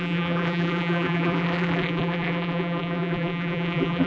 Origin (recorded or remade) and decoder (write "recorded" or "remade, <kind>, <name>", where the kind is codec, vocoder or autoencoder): remade, vocoder, BigVGAN v2